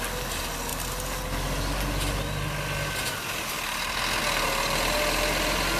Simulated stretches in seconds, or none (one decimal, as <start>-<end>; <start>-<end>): none